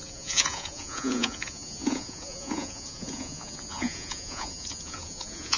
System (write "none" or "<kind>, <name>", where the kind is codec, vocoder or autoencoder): vocoder, Vocos